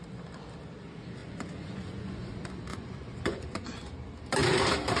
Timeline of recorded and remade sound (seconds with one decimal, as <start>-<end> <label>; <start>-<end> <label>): 0.0-1.2 recorded; 1.2-2.3 remade; 2.3-2.7 recorded; 2.7-3.9 remade; 3.9-5.0 recorded